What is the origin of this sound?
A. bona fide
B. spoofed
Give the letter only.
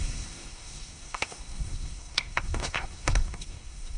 B